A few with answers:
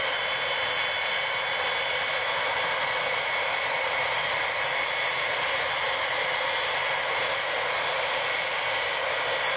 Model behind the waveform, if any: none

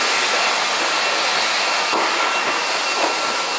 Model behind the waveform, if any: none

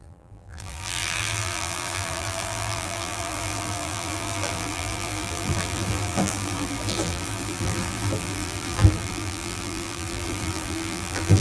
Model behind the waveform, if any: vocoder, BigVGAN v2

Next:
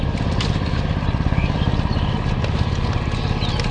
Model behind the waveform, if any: none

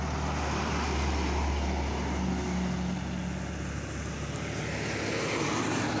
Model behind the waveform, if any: none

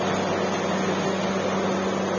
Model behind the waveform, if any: none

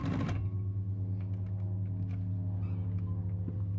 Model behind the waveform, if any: none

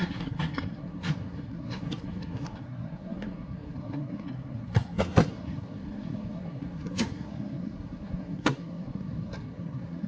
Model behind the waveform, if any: codec, SNAC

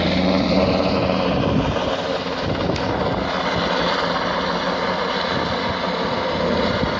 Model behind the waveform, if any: none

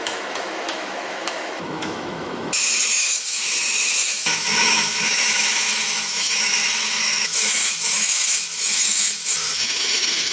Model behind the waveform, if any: autoencoder, DAC-VAE